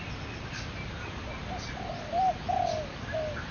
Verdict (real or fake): real